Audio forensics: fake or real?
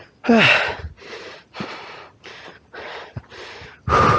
real